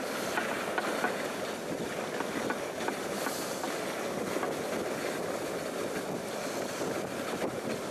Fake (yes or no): no